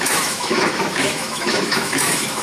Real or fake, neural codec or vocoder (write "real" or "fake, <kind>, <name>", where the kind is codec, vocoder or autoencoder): fake, autoencoder, DAC-VAE